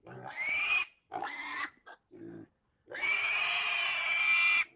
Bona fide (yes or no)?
yes